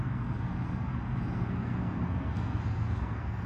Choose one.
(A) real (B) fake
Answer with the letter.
B